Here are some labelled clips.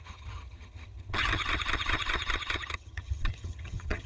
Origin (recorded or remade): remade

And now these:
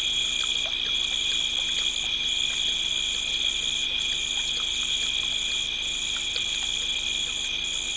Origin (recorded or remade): recorded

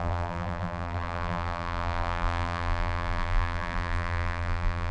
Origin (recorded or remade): remade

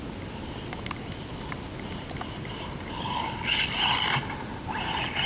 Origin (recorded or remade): recorded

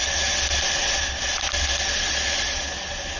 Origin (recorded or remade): recorded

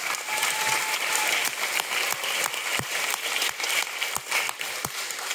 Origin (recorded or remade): recorded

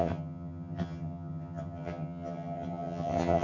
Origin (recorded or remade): remade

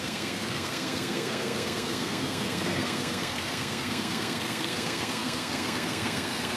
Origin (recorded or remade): remade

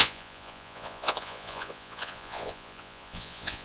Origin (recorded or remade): remade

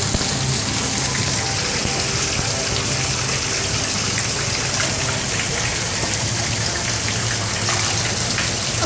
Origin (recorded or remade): recorded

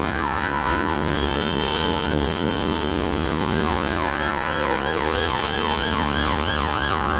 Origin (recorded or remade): remade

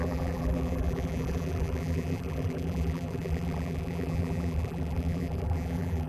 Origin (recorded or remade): remade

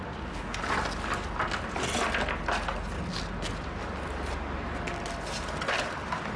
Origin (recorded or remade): recorded